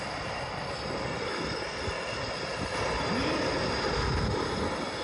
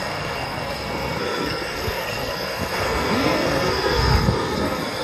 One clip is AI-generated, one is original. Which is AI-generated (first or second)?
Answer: second